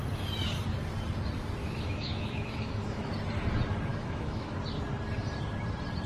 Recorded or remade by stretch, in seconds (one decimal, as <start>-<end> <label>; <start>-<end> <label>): 0.0-1.6 recorded; 1.6-3.1 remade; 3.1-3.9 recorded; 3.9-4.5 remade; 4.5-6.1 recorded

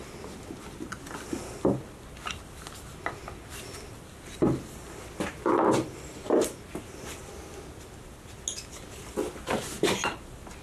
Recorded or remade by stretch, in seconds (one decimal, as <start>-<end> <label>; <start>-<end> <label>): 0.0-10.6 recorded

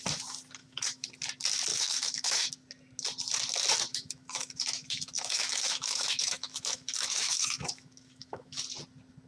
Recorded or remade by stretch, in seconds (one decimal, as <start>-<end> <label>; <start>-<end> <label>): 0.0-0.6 recorded; 0.6-1.1 remade; 1.1-1.7 recorded; 1.7-2.5 remade; 2.5-3.9 recorded; 3.9-8.6 remade; 8.6-9.3 recorded

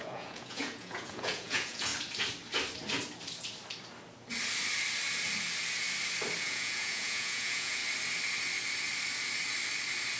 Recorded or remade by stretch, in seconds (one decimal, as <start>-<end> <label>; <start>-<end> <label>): 0.0-1.9 remade; 1.9-6.4 recorded; 6.4-7.8 remade; 7.8-10.2 recorded